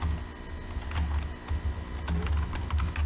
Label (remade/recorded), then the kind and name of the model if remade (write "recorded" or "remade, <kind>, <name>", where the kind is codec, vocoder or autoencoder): recorded